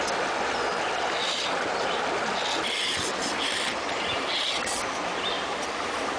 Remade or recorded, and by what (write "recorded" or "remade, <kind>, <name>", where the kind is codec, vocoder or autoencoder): recorded